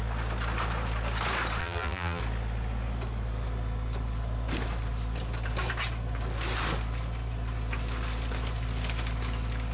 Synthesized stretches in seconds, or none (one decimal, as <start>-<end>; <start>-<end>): 1.6-2.2